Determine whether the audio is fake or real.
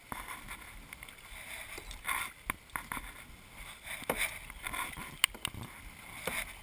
real